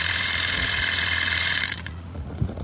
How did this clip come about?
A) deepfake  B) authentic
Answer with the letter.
A